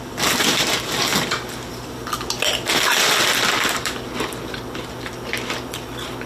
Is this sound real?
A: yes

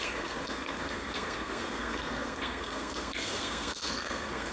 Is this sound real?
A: no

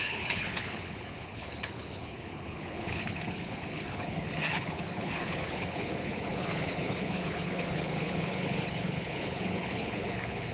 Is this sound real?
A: no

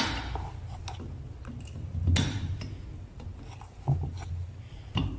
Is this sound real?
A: yes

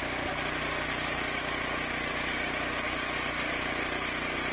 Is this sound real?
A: yes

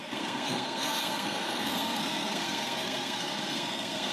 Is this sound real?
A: no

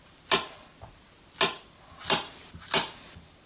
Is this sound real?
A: yes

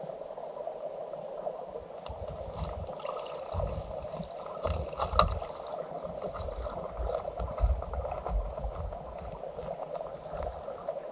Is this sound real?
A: yes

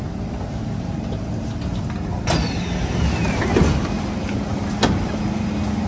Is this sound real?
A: yes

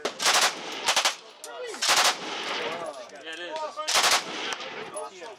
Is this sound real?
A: yes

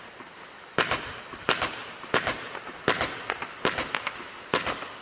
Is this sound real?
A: yes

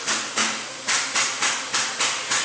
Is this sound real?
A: yes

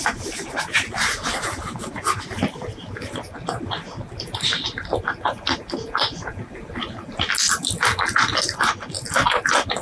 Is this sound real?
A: yes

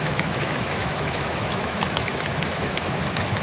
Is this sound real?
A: no